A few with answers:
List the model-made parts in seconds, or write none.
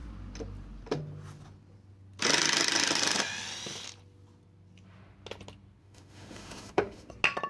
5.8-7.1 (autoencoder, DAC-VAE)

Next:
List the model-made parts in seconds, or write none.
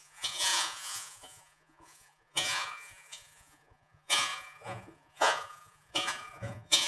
0.0-6.9 (vocoder, Vocos)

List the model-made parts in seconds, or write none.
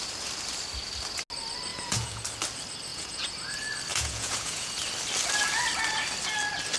1.7-2.2 (vocoder, Vocos); 2.9-3.5; 3.9-4.7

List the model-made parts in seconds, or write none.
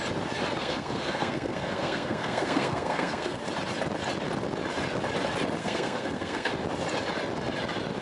0.6-3.4 (codec, SNAC); 5.6-6.5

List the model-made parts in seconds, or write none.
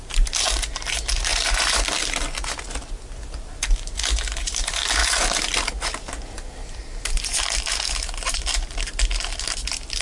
1.3-1.8 (vocoder, BigVGAN v2)